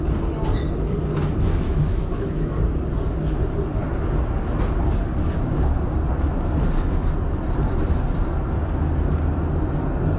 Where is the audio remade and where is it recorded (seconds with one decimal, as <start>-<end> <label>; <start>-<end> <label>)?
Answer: 0.0-1.5 recorded; 1.5-2.5 remade; 2.5-10.2 recorded